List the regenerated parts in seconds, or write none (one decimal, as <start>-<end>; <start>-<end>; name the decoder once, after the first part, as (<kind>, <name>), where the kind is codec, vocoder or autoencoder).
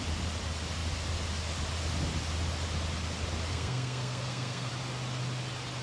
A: 3.5-4.7 (codec, SNAC)